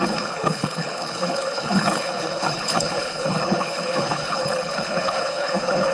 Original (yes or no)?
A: no